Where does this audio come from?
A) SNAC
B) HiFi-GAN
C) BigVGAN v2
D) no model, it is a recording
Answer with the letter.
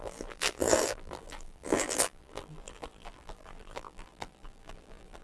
C